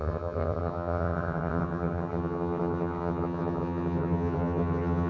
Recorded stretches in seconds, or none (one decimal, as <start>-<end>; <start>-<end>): none